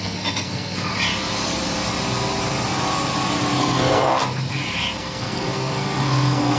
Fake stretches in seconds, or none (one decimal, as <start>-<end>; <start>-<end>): 0.0-0.9; 3.6-4.2; 5.0-6.6